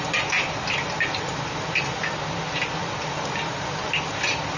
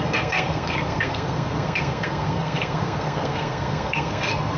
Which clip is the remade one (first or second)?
second